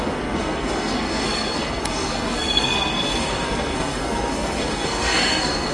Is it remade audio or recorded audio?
remade